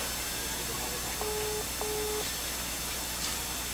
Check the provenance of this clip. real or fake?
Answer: real